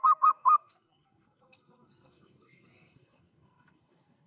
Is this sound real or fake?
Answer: fake